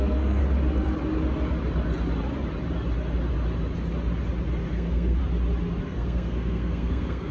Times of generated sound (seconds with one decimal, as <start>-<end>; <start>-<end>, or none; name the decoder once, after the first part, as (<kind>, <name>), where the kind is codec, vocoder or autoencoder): 0.0-0.4 (codec, SNAC); 4.7-5.2; 5.8-7.3